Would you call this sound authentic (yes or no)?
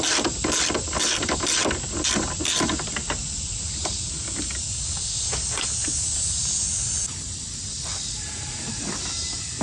yes